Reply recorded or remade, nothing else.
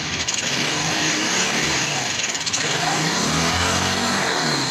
remade